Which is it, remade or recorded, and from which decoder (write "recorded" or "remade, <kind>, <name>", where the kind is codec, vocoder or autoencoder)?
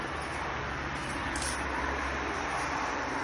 remade, vocoder, BigVGAN v2